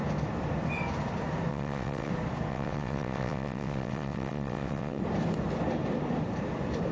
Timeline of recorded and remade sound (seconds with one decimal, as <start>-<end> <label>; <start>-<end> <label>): 0.0-1.5 recorded; 1.5-2.1 remade; 2.1-2.5 recorded; 2.5-5.0 remade; 5.0-6.9 recorded